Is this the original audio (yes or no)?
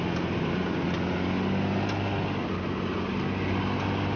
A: yes